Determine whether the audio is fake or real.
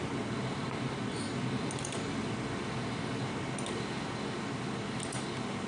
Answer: real